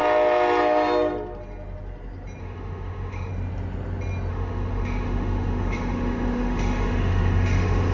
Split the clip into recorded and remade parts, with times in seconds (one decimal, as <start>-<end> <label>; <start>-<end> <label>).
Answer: 0.0-2.4 recorded; 2.4-3.3 remade; 3.3-4.3 recorded; 4.3-7.9 remade